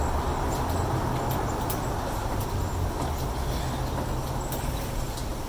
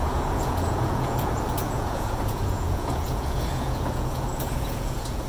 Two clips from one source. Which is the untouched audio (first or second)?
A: first